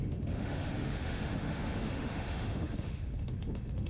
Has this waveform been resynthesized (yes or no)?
yes